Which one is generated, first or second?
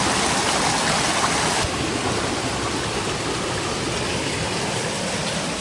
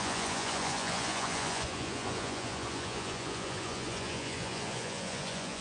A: second